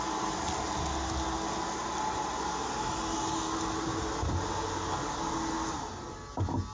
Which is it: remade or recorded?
recorded